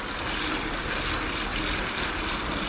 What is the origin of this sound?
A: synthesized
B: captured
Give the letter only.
B